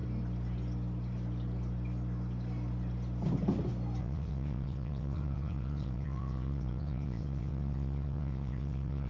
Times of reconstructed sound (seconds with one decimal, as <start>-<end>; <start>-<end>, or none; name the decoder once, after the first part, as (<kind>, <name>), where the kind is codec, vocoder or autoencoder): 4.0-9.1 (vocoder, WaveNeXt)